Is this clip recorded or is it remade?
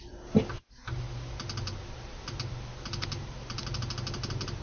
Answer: recorded